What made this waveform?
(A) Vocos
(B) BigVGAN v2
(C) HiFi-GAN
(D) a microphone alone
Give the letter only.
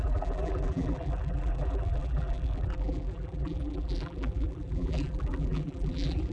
B